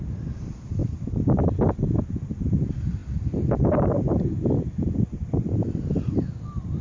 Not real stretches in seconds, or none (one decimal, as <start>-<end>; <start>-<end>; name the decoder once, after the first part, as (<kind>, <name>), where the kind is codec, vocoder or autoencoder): none